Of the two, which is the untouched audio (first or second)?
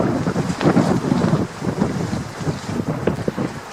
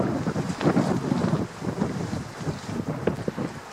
second